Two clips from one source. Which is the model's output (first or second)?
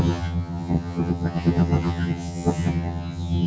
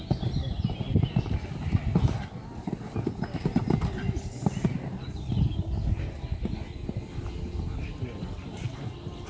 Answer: first